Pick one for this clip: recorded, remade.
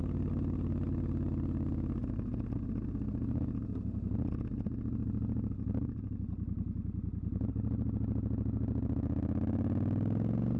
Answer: recorded